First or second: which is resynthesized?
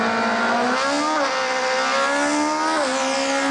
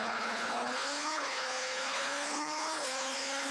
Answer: second